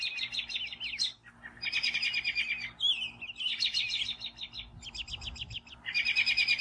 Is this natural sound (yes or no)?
yes